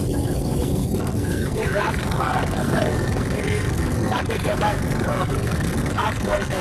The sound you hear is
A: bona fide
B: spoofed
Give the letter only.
B